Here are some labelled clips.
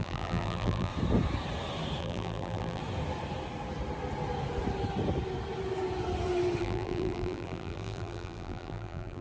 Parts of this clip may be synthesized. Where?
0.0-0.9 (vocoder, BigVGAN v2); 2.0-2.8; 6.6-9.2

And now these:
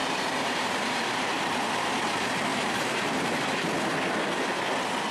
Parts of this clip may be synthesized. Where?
0.0-1.9 (vocoder, BigVGAN v2); 2.5-3.7

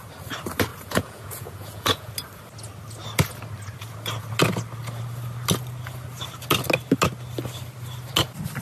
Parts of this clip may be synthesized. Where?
0.7-2.1 (vocoder, Vocos)

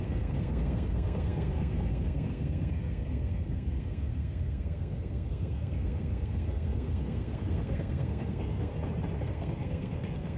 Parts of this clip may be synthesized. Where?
0.0-8.7 (codec, SNAC); 9.2-10.4

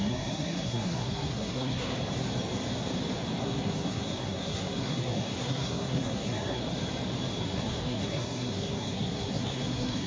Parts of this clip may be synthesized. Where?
0.0-1.9 (codec, SNAC); 3.4-6.6; 7.4-10.1

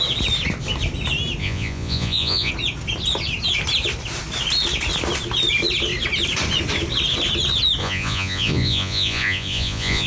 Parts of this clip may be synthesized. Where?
1.4-2.5 (vocoder, Vocos); 7.8-10.1

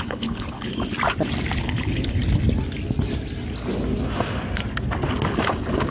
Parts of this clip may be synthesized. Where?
0.0-0.7 (codec, HILCodec); 1.6-2.2